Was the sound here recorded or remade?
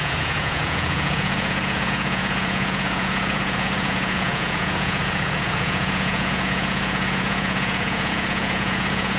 remade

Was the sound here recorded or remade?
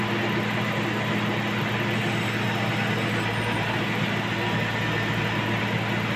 recorded